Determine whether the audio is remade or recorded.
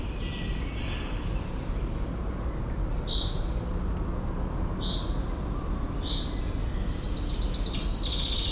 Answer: recorded